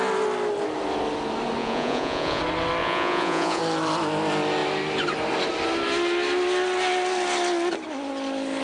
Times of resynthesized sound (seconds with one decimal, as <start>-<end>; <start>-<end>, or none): 1.6-2.4; 2.8-3.6